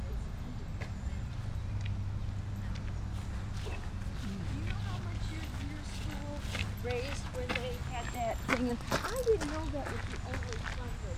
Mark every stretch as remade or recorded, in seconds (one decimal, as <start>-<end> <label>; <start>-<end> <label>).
0.0-11.2 recorded